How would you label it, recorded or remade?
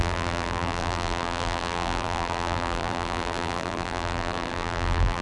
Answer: remade